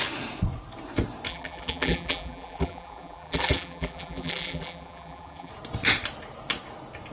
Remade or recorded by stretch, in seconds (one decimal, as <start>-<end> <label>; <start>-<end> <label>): 0.0-1.3 recorded; 1.3-5.5 remade; 5.5-7.1 recorded

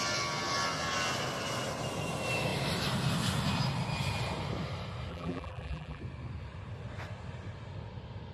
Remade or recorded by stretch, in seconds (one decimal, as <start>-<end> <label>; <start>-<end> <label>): 0.0-5.1 recorded; 5.1-6.0 remade; 6.0-8.3 recorded